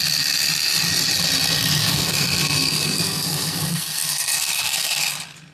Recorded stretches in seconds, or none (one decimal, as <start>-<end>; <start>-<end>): 0.0-1.8; 5.1-5.5